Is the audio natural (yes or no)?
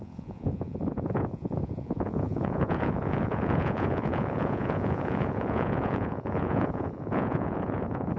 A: no